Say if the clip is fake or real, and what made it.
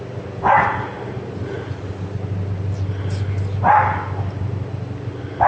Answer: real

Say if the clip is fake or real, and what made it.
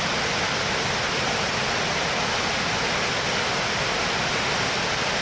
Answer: real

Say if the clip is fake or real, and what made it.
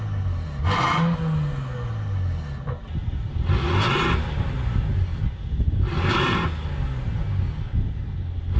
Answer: real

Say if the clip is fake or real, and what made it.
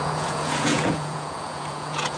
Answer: fake, vocoder, Vocos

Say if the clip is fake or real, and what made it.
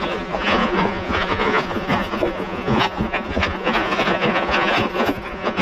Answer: fake, vocoder, Vocos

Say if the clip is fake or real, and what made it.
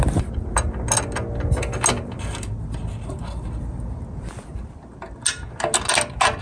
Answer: real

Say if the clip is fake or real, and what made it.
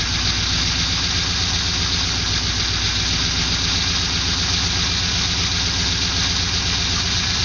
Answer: real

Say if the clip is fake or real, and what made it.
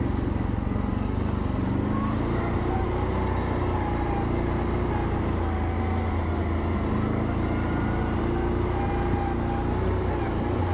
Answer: real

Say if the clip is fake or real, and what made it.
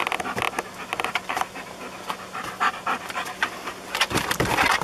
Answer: real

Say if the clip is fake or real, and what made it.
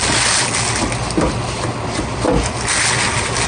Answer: real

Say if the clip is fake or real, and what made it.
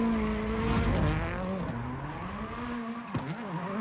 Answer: real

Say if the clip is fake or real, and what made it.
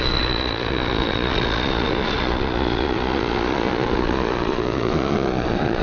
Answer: fake, vocoder, Vocos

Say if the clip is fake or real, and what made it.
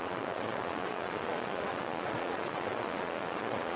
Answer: fake, vocoder, Vocos